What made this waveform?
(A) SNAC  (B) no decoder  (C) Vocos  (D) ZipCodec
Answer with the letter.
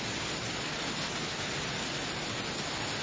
B